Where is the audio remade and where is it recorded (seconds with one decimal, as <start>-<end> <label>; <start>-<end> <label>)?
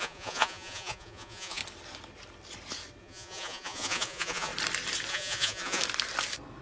0.0-1.6 remade; 1.6-3.0 recorded; 3.0-4.5 remade; 4.5-5.1 recorded; 5.1-5.8 remade; 5.8-6.6 recorded